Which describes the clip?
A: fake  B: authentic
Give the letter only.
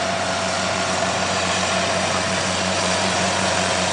A